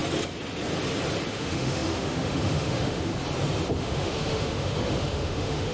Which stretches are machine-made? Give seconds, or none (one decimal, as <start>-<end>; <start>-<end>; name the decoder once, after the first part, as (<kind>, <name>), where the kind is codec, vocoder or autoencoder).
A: 1.3-3.1 (autoencoder, DAC-VAE); 3.8-5.7